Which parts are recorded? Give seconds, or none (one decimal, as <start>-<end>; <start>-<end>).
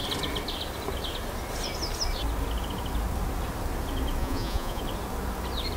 0.0-4.2; 4.8-5.8